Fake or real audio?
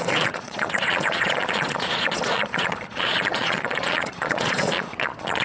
fake